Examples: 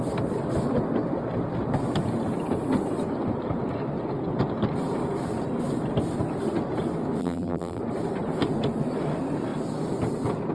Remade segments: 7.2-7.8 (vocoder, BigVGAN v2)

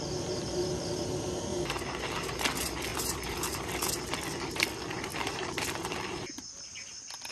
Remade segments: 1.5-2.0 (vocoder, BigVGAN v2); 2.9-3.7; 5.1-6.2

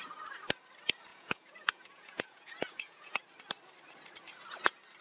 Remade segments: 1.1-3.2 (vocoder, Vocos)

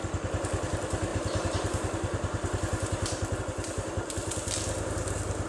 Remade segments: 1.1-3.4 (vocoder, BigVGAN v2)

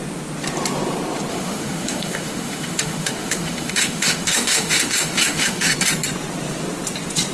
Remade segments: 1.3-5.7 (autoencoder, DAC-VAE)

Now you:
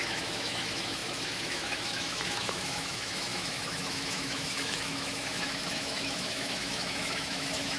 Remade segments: 0.0-7.8 (autoencoder, DAC-VAE)

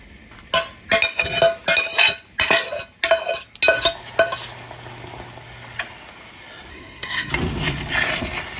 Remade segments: 6.7-7.3 (codec, SNAC)

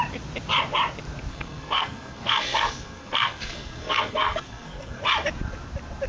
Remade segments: 1.3-5.0 (codec, SNAC)